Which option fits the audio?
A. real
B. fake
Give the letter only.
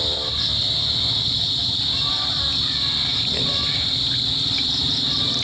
A